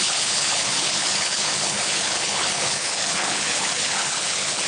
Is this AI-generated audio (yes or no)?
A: yes